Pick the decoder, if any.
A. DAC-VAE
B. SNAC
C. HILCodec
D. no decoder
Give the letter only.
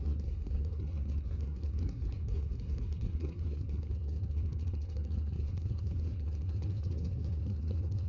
B